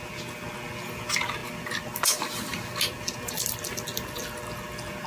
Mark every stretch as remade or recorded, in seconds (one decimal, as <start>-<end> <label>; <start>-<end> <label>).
0.0-5.1 recorded